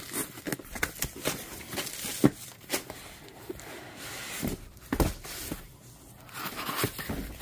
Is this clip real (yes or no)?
yes